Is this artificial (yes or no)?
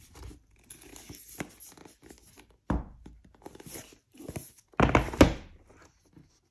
no